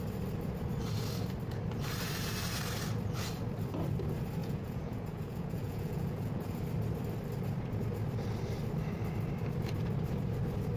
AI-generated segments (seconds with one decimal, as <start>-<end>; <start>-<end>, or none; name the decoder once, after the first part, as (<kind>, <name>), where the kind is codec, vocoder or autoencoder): 4.4-6.6 (vocoder, Vocos)

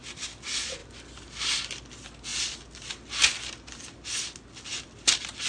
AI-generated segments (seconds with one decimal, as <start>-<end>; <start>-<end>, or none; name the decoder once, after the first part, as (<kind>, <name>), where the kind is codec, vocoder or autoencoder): none

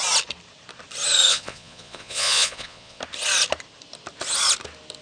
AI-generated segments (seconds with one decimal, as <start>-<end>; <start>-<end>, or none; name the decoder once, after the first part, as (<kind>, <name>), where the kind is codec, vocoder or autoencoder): 1.3-3.0 (vocoder, Vocos)

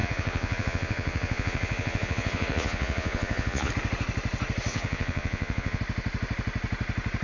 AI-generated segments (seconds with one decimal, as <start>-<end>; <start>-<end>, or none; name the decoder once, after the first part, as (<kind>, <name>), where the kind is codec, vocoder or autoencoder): 0.0-3.7 (vocoder, Vocos); 4.7-5.8

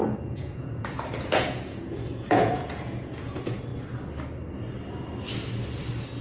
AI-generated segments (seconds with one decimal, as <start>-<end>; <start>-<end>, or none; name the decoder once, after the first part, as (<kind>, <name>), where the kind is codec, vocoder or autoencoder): 0.0-3.7 (vocoder, Vocos)

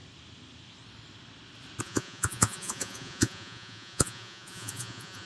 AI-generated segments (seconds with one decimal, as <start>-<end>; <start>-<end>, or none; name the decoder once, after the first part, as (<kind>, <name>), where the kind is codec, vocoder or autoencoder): 1.8-5.3 (vocoder, Vocos)

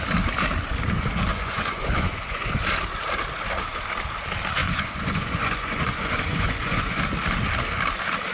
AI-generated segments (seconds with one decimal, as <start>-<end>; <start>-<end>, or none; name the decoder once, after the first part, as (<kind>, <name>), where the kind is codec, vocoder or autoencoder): 1.3-2.6 (vocoder, Vocos); 4.6-7.0